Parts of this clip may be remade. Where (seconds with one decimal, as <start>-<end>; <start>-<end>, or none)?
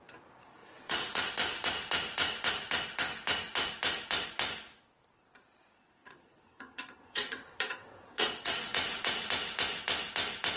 0.6-1.3; 6.0-9.3